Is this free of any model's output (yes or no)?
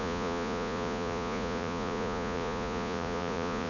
no